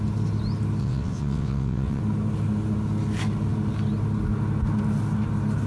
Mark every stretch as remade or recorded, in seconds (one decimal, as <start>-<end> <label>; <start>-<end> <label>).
0.0-0.8 recorded; 0.8-2.0 remade; 2.0-5.7 recorded